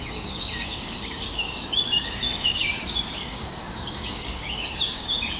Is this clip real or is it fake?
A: fake